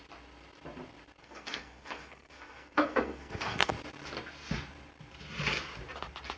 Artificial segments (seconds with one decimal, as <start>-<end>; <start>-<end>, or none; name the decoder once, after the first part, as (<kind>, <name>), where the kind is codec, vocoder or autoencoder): 1.2-3.7 (codec, SNAC)